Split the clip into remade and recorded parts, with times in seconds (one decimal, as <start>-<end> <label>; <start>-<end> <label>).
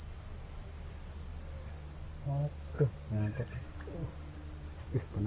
0.0-5.3 recorded